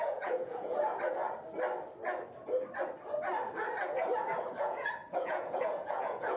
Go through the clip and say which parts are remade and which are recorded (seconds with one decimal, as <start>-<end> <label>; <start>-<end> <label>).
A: 0.0-0.8 remade; 0.8-4.6 recorded; 4.6-6.4 remade